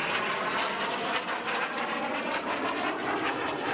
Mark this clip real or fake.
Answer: real